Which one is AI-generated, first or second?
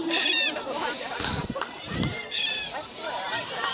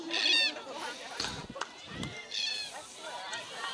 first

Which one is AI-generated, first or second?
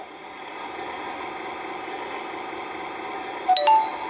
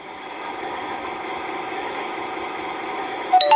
second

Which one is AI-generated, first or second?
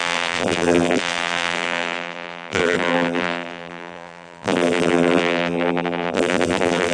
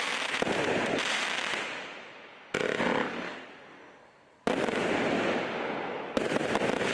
first